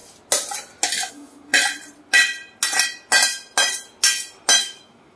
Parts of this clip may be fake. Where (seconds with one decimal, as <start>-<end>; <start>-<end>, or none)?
1.1-1.5; 4.6-5.2